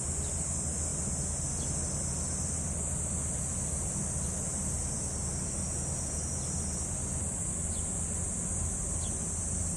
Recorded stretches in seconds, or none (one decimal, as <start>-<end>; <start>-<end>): 0.0-9.8